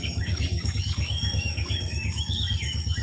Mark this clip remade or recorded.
remade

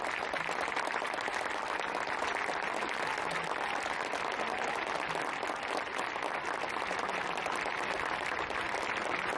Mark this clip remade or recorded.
recorded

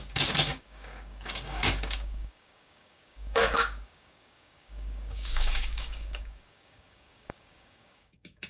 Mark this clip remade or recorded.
remade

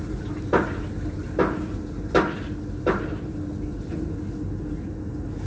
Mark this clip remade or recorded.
recorded